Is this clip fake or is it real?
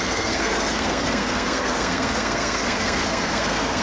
fake